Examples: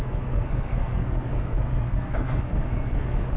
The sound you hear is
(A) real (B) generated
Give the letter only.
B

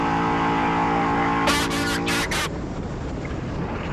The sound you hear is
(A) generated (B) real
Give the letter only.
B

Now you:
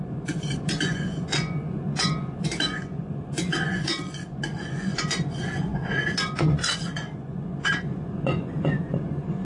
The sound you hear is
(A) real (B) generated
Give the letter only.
B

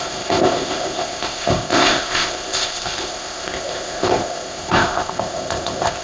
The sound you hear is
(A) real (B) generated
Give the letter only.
B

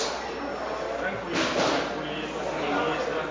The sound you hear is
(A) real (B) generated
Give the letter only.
A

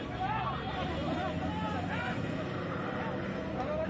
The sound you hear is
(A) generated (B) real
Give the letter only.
B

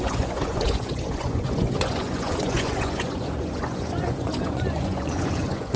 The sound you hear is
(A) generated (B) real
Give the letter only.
A